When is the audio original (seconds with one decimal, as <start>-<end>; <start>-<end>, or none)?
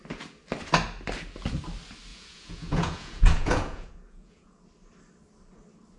0.0-2.1; 4.6-6.0